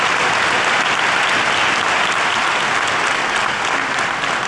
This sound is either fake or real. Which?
real